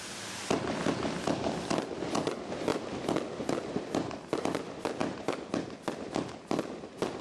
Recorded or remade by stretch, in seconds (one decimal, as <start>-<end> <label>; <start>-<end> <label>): 0.0-7.2 recorded